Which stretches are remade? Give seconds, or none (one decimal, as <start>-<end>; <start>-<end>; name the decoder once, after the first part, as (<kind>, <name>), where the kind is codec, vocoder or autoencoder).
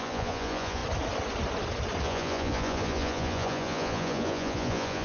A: 0.0-0.8 (vocoder, Vocos); 2.0-5.0